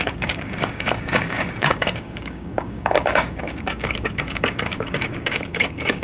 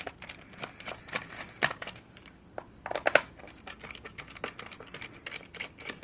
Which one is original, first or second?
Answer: second